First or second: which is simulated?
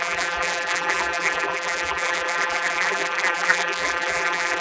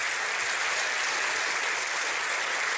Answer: first